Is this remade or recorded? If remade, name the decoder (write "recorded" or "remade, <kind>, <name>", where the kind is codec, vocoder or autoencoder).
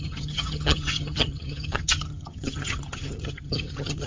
remade, vocoder, HiFi-GAN